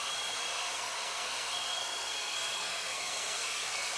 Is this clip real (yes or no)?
no